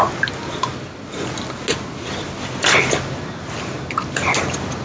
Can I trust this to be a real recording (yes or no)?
yes